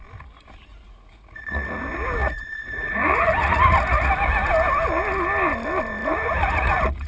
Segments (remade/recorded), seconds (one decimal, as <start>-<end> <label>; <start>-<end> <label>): 0.0-0.7 recorded; 0.7-1.8 remade; 1.8-2.2 recorded; 2.2-4.1 remade; 4.1-6.0 recorded; 6.0-7.1 remade